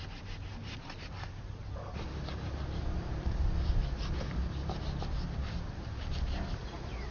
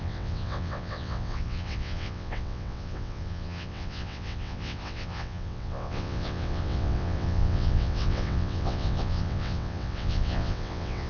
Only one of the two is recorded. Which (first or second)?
first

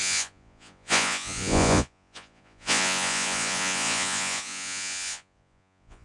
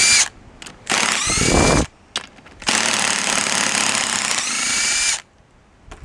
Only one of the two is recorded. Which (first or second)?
second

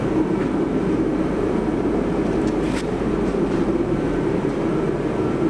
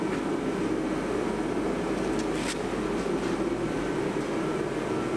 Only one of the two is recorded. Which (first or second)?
second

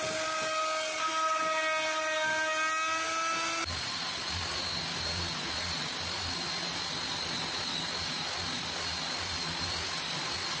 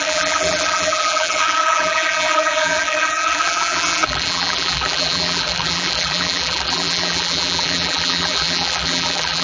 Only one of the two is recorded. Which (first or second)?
first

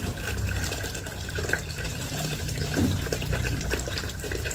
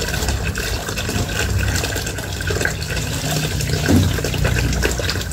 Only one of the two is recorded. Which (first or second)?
second